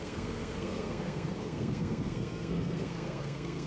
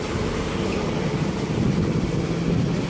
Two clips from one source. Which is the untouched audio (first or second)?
second